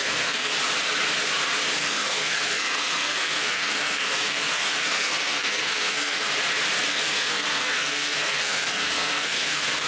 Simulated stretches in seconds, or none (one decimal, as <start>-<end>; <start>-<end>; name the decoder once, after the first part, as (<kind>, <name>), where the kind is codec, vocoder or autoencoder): 0.0-0.5 (codec, SNAC); 1.8-6.3; 6.9-9.9